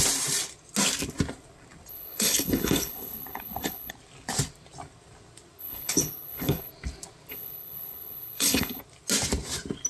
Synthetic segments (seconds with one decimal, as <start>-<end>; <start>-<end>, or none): 1.9-3.9; 5.6-6.7; 7.3-8.8